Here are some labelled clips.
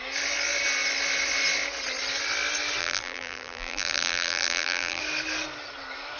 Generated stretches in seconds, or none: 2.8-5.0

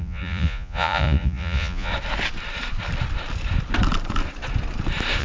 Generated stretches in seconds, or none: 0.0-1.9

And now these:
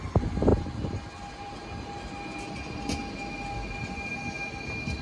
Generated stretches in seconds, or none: none